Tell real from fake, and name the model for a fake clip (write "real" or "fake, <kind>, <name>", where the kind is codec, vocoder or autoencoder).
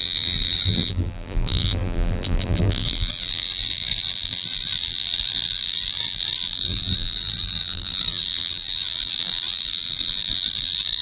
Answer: fake, vocoder, BigVGAN v2